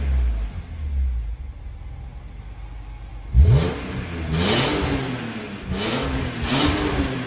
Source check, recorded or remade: recorded